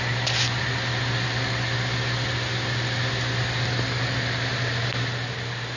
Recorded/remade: recorded